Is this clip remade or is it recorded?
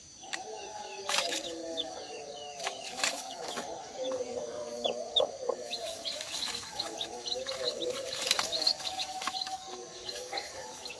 remade